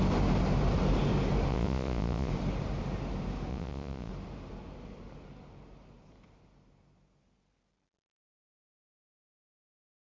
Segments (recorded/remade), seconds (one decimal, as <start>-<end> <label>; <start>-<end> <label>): 0.0-1.5 recorded; 1.5-2.3 remade; 2.3-3.5 recorded; 3.5-4.1 remade; 4.1-10.0 recorded